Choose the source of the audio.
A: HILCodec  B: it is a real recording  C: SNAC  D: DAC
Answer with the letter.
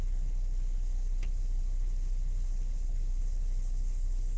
A